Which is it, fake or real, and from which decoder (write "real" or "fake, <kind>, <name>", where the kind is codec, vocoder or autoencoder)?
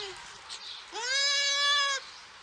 real